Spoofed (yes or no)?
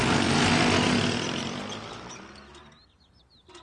no